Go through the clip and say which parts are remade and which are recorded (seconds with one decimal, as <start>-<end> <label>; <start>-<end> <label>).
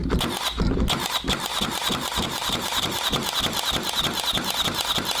0.0-1.5 recorded; 1.5-3.0 remade; 3.0-5.2 recorded